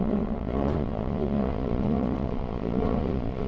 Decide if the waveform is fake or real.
fake